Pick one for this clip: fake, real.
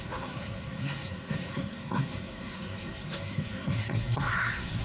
fake